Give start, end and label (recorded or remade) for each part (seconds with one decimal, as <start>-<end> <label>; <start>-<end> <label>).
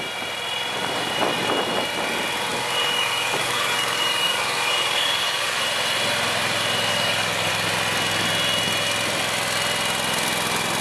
0.0-2.5 recorded; 2.5-5.6 remade; 5.6-6.9 recorded; 6.9-7.5 remade; 7.5-10.8 recorded